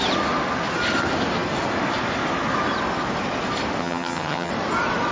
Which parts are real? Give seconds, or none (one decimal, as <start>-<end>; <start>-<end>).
0.0-3.8; 4.5-5.1